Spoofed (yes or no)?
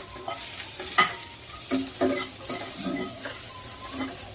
no